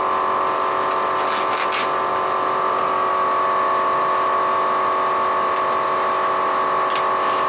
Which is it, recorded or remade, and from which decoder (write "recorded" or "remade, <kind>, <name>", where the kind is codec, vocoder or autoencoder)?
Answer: recorded